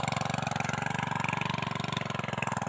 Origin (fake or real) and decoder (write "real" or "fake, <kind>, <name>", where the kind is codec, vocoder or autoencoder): real